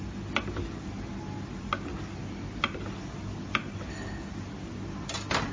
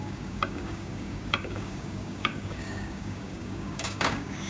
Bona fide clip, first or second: first